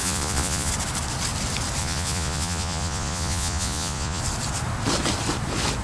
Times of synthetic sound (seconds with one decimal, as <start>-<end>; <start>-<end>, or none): 0.0-0.7; 1.8-4.2